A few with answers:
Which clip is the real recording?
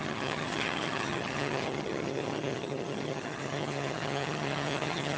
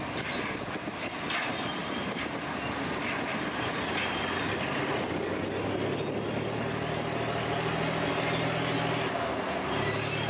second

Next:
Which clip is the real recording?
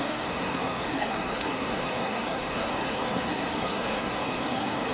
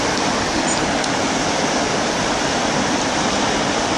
second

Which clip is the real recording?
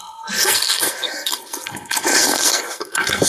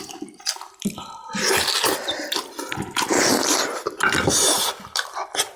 second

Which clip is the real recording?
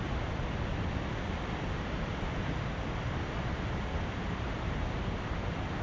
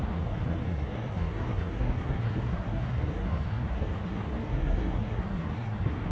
first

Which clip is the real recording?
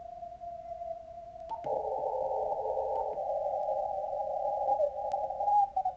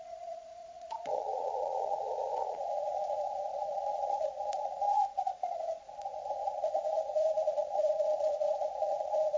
first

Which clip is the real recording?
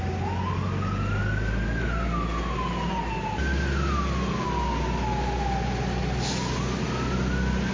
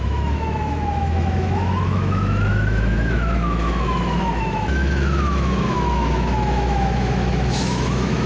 first